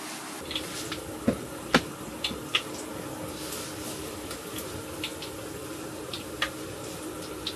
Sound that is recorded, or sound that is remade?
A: recorded